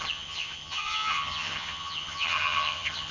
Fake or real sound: fake